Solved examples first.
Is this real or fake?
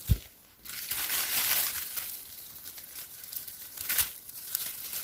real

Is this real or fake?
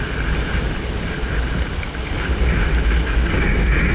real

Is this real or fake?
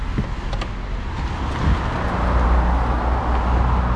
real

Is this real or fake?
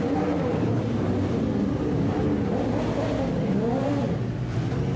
real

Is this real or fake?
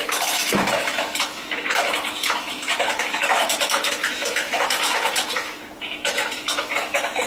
fake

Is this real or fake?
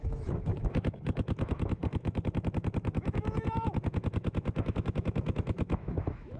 fake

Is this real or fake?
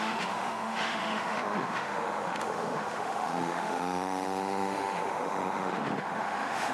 fake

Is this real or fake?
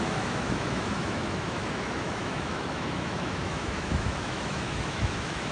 fake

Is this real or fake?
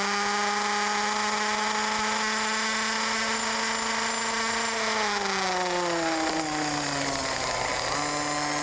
real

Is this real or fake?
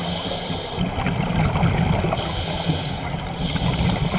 real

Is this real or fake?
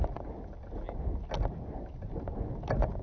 real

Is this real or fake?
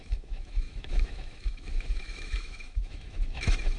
fake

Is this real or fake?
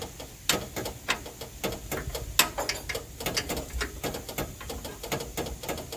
real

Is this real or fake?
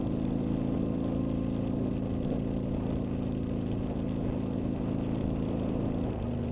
real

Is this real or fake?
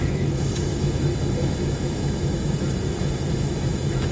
fake